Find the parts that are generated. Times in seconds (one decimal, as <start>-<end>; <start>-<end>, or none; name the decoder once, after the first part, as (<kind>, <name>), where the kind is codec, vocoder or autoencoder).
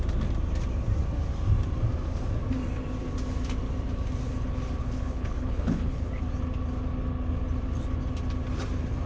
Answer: 4.8-6.1 (codec, HILCodec)